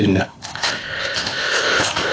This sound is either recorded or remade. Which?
remade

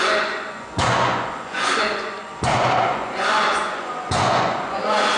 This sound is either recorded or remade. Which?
remade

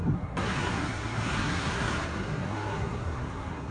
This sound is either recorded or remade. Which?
remade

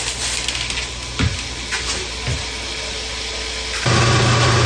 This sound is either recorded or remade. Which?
recorded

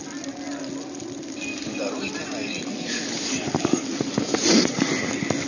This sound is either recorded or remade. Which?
recorded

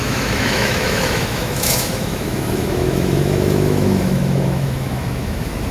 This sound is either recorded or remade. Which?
remade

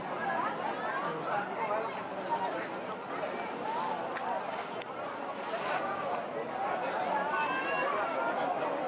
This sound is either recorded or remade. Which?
recorded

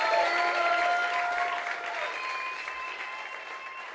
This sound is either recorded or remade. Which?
recorded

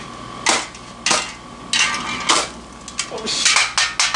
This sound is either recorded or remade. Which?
recorded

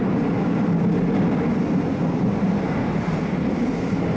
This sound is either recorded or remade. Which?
recorded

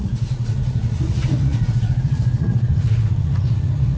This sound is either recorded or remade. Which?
remade